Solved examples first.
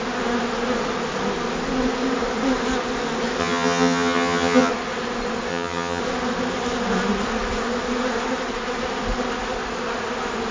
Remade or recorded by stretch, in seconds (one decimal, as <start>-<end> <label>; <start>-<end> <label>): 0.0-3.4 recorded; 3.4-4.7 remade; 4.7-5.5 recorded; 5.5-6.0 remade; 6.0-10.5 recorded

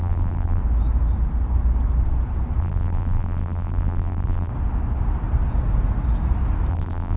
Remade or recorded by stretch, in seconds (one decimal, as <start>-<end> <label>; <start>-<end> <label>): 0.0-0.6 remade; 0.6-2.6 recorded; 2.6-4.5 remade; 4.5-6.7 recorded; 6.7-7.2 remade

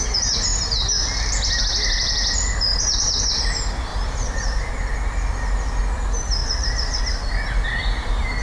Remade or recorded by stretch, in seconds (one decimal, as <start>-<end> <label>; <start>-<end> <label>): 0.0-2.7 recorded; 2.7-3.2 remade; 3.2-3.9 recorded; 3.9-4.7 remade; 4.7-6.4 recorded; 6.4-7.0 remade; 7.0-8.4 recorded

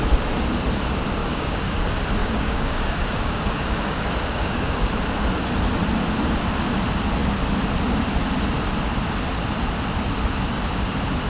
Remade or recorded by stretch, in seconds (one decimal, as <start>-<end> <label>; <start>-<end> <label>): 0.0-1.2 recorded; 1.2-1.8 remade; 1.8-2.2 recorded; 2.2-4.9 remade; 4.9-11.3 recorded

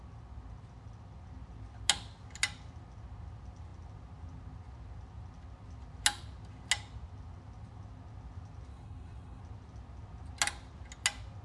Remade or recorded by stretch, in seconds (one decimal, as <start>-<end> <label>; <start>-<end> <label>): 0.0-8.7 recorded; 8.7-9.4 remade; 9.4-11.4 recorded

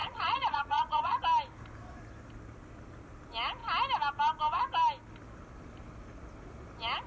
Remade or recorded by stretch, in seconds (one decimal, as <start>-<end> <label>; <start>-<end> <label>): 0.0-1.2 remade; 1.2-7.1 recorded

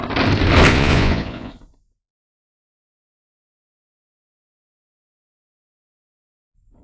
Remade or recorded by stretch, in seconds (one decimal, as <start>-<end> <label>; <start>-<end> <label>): 0.0-0.7 recorded; 0.7-1.5 remade; 1.5-6.8 recorded

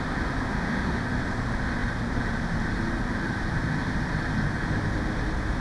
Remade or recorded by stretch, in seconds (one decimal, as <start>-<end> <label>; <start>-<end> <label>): 0.0-0.5 recorded; 0.5-1.0 remade; 1.0-5.6 recorded